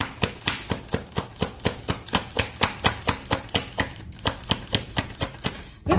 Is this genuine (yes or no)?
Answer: yes